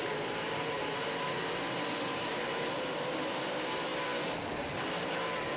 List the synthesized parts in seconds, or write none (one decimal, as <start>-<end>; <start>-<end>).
0.0-3.9; 4.6-5.6